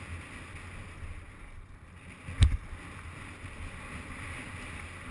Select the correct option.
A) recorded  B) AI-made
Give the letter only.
A